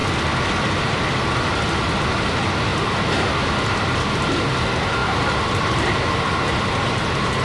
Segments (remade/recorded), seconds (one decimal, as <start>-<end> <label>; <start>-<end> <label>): 0.0-5.0 recorded; 5.0-7.4 remade